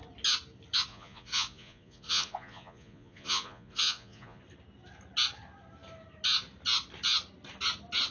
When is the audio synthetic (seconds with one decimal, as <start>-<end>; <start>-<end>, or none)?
0.9-4.4